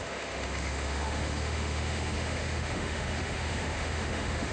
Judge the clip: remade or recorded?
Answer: remade